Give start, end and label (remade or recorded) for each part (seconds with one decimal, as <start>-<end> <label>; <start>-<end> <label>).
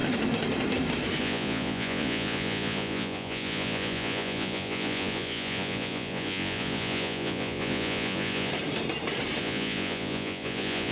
0.0-1.2 recorded; 1.2-8.5 remade; 8.5-9.4 recorded; 9.4-10.9 remade